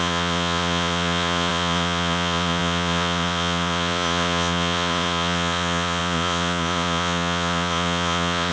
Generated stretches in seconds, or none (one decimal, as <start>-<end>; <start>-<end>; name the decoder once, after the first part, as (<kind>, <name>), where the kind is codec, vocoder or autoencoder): 0.0-8.5 (vocoder, Vocos)